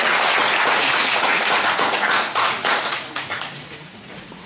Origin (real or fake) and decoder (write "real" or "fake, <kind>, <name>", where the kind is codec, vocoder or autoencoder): fake, vocoder, Vocos